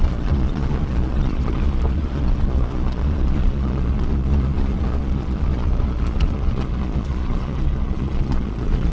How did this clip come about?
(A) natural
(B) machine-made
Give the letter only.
B